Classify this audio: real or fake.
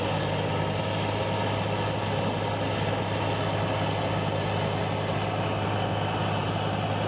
real